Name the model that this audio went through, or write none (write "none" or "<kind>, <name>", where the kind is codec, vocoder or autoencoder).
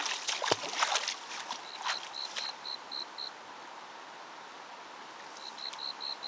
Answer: none